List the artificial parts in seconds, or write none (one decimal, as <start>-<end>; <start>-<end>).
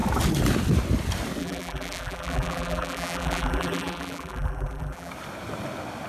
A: 1.4-5.1